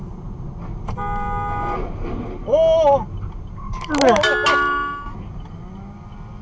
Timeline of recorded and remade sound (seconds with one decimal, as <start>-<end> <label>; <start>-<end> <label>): 0.0-6.4 recorded

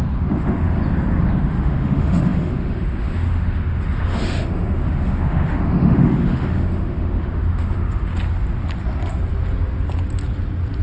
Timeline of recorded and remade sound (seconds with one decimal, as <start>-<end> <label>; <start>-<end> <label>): 0.0-0.8 remade; 0.8-1.3 recorded; 1.3-8.1 remade; 8.1-10.8 recorded

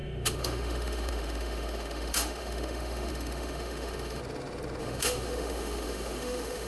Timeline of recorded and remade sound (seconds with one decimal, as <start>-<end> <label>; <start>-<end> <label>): 0.0-4.2 remade; 4.2-4.8 recorded; 4.8-6.7 remade

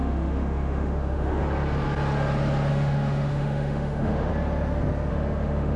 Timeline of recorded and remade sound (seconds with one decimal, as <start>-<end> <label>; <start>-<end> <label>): 0.0-1.4 remade; 1.4-2.7 recorded; 2.7-4.3 remade; 4.3-5.1 recorded; 5.1-5.8 remade

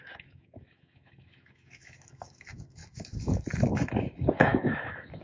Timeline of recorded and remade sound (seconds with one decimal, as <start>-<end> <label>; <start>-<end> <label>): 0.0-5.2 remade